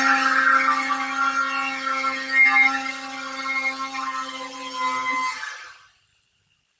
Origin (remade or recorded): recorded